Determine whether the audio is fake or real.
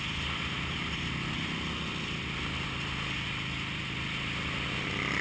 real